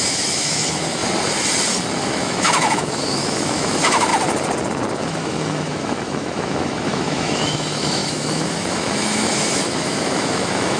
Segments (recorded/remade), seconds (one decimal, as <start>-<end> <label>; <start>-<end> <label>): 0.0-1.0 remade; 1.0-2.0 recorded; 2.0-4.1 remade; 4.1-5.0 recorded; 5.0-10.8 remade